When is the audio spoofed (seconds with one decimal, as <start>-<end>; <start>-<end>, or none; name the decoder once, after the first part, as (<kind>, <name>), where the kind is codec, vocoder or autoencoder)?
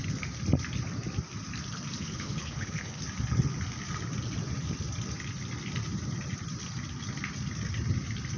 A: 2.0-3.0 (codec, HILCodec)